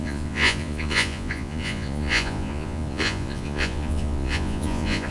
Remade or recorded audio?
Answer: remade